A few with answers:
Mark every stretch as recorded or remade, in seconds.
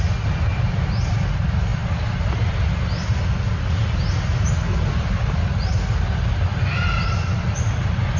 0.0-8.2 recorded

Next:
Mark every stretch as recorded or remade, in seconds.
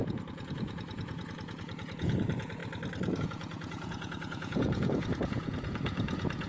0.0-2.6 remade; 2.6-3.2 recorded; 3.2-6.5 remade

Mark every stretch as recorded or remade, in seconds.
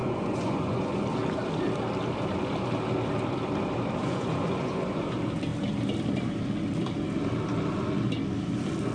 0.0-1.0 remade; 1.0-4.0 recorded; 4.0-5.0 remade; 5.0-8.9 recorded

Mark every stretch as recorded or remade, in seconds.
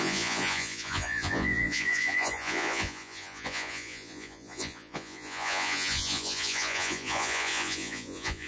0.0-8.5 remade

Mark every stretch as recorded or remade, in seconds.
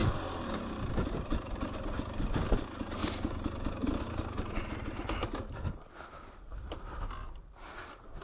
0.0-8.2 recorded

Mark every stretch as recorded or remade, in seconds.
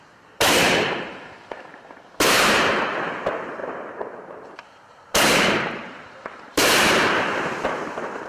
0.0-8.3 remade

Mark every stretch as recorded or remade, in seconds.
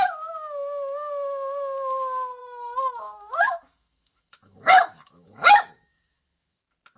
0.0-2.4 recorded; 2.4-6.6 remade; 6.6-7.0 recorded